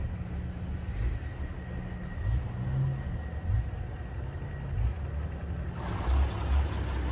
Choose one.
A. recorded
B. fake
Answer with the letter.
A